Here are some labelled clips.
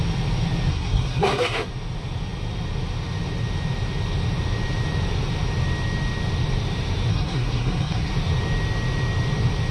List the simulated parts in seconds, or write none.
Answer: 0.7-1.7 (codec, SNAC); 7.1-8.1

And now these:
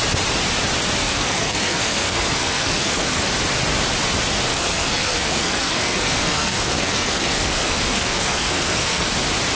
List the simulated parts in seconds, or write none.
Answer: 1.0-3.3 (codec, SNAC); 4.5-9.1

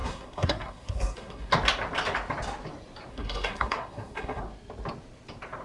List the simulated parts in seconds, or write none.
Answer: 0.0-1.5 (codec, SNAC); 3.1-4.4

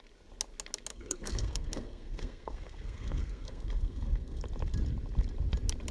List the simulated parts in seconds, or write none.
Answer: 0.9-4.4 (codec, SNAC)

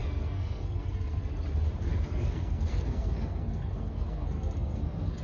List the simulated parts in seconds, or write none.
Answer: 0.0-1.3 (codec, SNAC); 1.9-5.2